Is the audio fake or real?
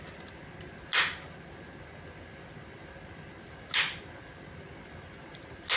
real